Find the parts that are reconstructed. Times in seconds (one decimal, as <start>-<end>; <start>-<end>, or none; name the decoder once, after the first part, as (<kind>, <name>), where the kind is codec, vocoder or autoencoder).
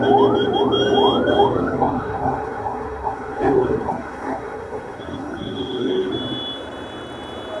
1.5-6.1 (codec, SNAC)